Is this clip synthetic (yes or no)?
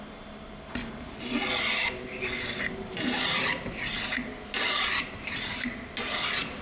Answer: no